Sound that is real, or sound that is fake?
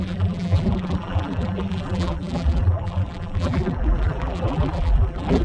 fake